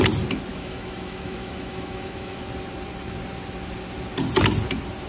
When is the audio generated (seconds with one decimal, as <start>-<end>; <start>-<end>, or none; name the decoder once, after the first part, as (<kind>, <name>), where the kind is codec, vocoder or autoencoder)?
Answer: 0.5-2.4 (autoencoder, DAC-VAE)